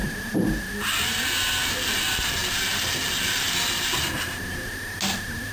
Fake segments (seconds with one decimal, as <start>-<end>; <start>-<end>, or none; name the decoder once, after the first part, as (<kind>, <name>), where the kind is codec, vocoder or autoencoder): none